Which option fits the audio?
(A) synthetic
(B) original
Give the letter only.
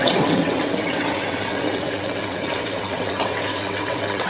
A